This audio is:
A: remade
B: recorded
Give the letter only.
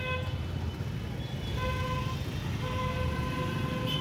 B